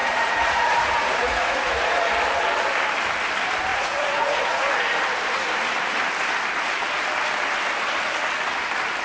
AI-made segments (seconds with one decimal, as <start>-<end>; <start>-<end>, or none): 0.0-2.0; 3.7-4.7